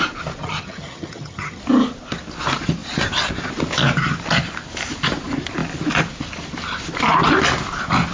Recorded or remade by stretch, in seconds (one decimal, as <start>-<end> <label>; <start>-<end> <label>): 0.0-0.4 recorded; 0.4-1.6 remade; 1.6-8.1 recorded